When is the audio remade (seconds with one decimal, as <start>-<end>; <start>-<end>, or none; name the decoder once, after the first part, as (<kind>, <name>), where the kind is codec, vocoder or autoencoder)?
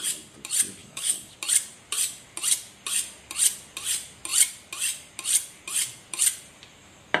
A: 0.8-1.3 (codec, DAC)